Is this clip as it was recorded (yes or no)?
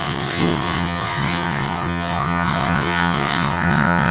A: no